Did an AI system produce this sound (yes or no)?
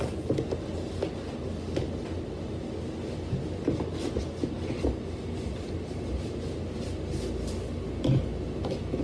no